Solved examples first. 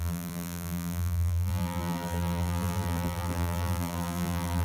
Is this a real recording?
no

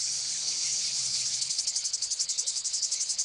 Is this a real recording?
no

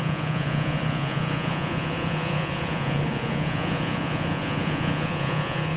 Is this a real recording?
no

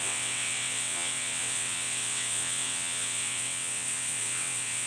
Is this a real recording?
no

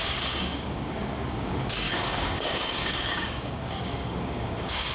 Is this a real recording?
no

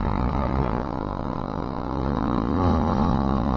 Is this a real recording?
no